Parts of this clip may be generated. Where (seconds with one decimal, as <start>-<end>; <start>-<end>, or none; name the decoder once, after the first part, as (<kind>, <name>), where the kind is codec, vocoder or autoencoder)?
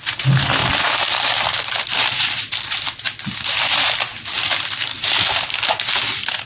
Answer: none